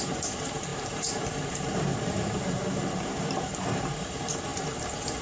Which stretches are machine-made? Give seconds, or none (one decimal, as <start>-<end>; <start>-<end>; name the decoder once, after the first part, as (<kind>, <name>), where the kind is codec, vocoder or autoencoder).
0.0-5.2 (vocoder, BigVGAN v2)